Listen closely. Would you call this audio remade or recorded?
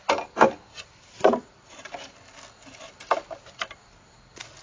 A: recorded